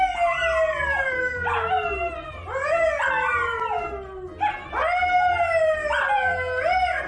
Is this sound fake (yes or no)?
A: no